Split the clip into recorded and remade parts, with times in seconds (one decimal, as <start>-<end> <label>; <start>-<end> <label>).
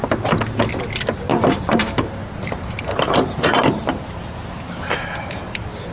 0.0-1.3 recorded; 1.3-4.0 remade; 4.0-5.9 recorded